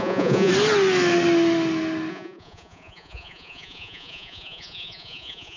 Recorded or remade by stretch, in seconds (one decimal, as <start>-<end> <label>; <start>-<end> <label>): 0.0-0.5 remade; 0.5-2.1 recorded; 2.1-5.6 remade

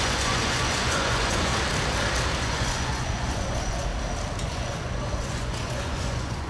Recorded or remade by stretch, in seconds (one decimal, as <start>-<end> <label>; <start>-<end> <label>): 0.0-1.5 remade; 1.5-2.4 recorded; 2.4-3.9 remade; 3.9-4.4 recorded; 4.4-6.5 remade

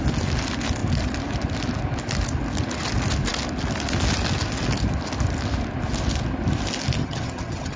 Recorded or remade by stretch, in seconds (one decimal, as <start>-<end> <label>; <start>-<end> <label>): 0.0-7.0 recorded; 7.0-7.8 remade